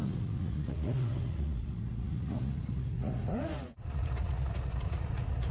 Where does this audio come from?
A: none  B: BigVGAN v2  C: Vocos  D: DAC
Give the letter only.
C